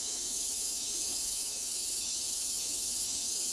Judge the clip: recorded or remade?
remade